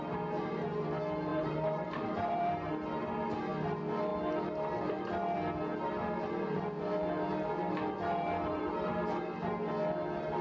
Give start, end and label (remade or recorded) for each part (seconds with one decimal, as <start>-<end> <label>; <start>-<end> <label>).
0.0-1.3 recorded; 1.3-2.7 remade; 2.7-10.4 recorded